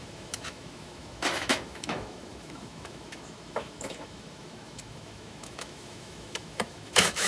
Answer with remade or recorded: remade